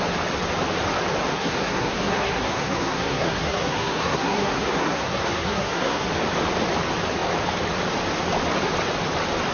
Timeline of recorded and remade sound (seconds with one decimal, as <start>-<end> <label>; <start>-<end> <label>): 0.0-1.3 recorded; 1.3-6.1 remade; 6.1-9.5 recorded